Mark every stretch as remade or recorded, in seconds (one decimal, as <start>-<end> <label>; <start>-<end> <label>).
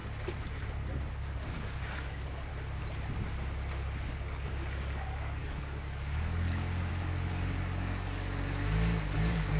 0.0-1.1 recorded; 1.1-2.5 remade; 2.5-4.1 recorded; 4.1-9.6 remade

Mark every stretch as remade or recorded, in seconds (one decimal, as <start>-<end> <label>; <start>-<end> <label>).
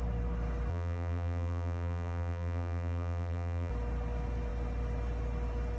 0.0-0.7 recorded; 0.7-3.7 remade; 3.7-5.8 recorded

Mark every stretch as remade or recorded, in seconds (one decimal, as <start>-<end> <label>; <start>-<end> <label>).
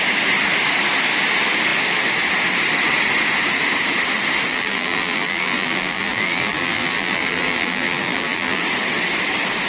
0.0-4.5 recorded; 4.5-8.6 remade; 8.6-9.7 recorded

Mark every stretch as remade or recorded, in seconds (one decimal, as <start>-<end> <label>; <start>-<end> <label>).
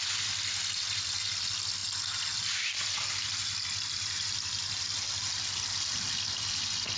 0.0-7.0 recorded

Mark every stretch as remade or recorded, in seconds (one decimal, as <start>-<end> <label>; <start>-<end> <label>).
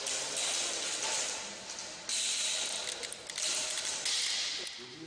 0.0-2.1 recorded; 2.1-2.8 remade; 2.8-5.1 recorded